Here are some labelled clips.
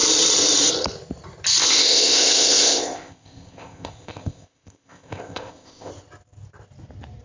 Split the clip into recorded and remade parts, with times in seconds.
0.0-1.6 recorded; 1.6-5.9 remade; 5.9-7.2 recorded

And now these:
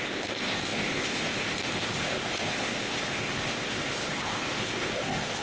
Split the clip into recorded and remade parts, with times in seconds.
0.0-5.4 remade